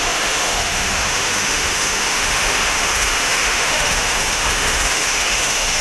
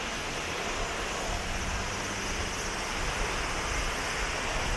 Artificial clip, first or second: first